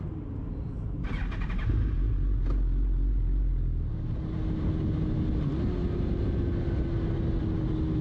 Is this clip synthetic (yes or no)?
no